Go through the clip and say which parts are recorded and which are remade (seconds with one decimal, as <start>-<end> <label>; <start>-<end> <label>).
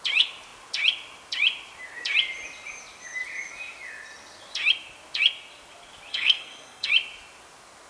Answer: 0.0-6.1 recorded; 6.1-6.9 remade; 6.9-7.9 recorded